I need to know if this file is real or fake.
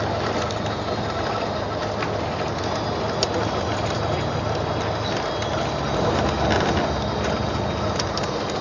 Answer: real